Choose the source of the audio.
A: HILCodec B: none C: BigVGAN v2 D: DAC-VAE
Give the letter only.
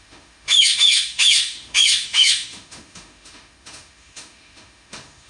D